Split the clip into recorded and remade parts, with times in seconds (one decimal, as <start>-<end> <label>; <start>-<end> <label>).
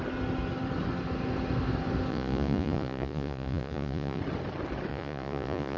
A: 0.0-2.1 recorded; 2.1-4.2 remade; 4.2-4.9 recorded; 4.9-5.8 remade